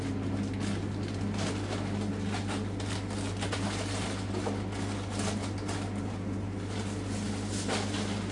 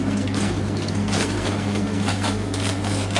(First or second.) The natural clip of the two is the first